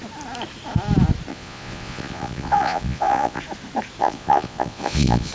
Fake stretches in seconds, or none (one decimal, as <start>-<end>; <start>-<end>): 1.3-3.4; 4.0-5.3